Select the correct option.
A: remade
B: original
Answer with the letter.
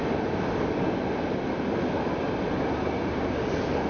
B